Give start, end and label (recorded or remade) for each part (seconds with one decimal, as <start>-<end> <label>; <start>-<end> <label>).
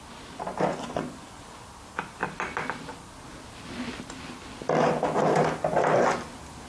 0.0-0.7 recorded; 0.7-1.4 remade; 1.4-6.7 recorded